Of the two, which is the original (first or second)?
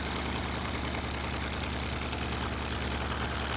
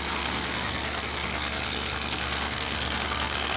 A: first